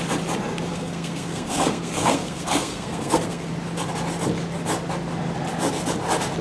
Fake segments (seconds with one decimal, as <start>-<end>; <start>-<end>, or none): 0.7-3.5